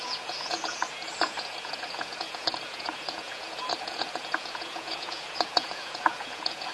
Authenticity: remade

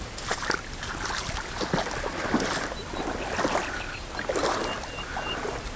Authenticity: recorded